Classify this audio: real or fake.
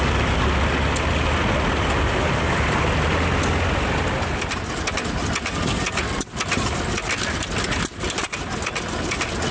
real